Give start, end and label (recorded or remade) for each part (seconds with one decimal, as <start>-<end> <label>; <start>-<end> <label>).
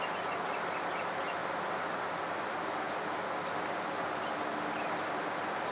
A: 0.0-5.7 recorded